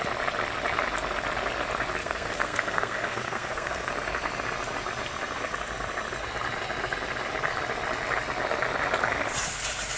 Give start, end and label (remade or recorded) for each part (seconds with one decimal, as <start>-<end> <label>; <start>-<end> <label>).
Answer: 0.0-2.0 recorded; 2.0-3.9 remade; 3.9-10.0 recorded